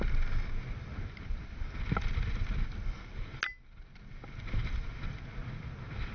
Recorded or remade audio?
recorded